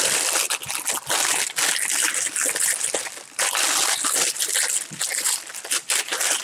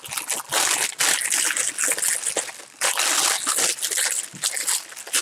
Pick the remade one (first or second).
first